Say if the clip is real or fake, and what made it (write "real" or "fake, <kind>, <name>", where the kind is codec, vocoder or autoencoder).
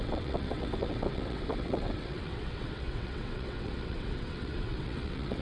fake, vocoder, WaveNeXt